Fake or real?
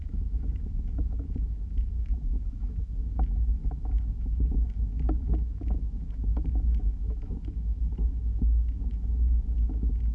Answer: fake